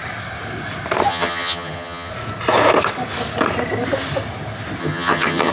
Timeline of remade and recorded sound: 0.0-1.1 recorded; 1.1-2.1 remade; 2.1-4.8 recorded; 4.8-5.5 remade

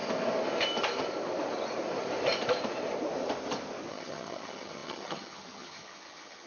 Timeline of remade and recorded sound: 0.0-3.9 recorded; 3.9-6.5 remade

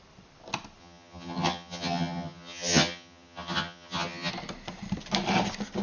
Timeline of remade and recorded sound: 0.0-0.8 recorded; 0.8-4.3 remade; 4.3-5.8 recorded